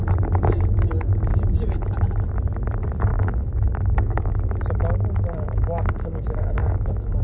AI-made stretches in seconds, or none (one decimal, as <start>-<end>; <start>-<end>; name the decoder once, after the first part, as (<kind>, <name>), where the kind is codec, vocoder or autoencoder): 3.1-4.5 (codec, DAC); 4.9-7.2